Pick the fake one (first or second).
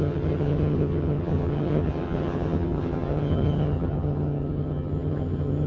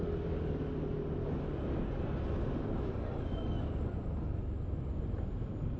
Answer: first